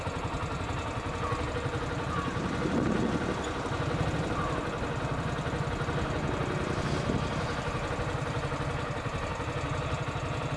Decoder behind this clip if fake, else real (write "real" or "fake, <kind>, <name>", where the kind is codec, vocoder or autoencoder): real